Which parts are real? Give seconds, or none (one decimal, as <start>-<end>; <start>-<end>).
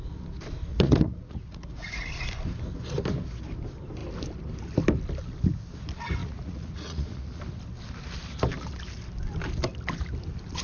0.0-0.7; 2.1-6.2; 7.4-10.6